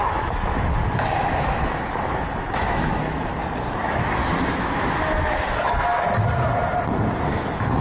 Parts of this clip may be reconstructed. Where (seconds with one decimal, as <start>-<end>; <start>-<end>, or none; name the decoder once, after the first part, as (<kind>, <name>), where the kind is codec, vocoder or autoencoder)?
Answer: 0.0-3.3 (autoencoder, DAC-VAE); 3.8-5.9; 7.2-7.8

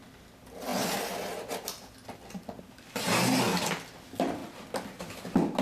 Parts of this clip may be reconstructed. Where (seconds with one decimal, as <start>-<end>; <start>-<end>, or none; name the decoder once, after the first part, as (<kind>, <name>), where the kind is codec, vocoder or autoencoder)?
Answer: none

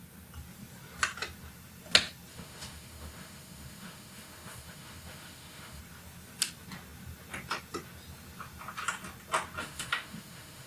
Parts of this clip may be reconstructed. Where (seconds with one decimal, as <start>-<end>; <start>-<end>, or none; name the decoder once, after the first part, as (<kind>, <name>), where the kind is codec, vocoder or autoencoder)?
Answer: 2.3-5.8 (autoencoder, DAC-VAE); 9.6-10.7

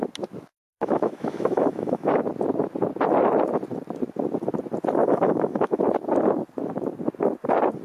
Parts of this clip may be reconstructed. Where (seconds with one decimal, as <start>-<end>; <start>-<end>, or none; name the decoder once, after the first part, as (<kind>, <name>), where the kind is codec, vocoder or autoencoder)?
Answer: 0.5-2.2 (autoencoder, DAC-VAE); 5.0-5.8

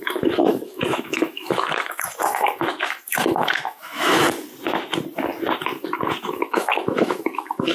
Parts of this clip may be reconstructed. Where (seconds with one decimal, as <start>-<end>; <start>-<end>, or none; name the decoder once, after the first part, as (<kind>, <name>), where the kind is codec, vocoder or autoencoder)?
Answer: 0.0-4.2 (autoencoder, DAC-VAE); 6.2-7.7